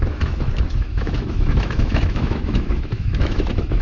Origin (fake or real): fake